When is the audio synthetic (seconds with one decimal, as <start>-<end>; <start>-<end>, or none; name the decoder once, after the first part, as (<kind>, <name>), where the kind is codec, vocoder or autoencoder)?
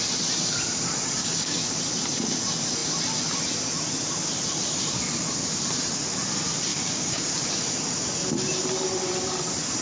1.2-1.7 (codec, DAC); 6.7-7.3